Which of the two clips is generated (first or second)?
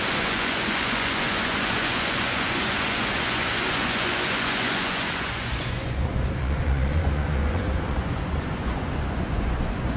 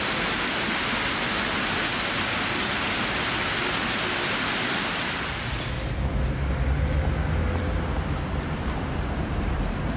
first